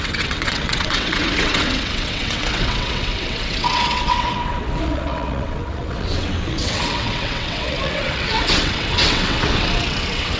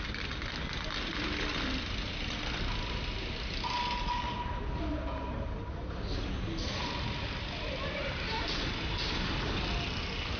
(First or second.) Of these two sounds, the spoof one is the first